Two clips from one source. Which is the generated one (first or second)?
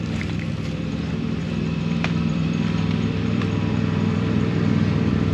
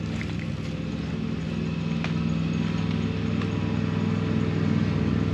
first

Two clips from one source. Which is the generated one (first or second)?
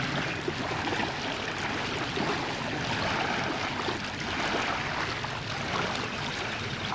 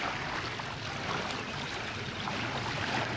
second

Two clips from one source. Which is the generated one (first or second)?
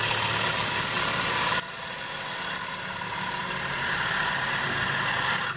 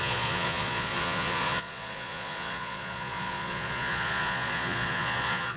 second